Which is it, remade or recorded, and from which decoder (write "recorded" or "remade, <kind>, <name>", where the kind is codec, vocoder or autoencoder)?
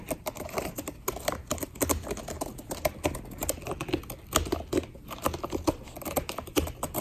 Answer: recorded